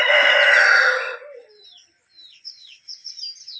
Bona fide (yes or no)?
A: yes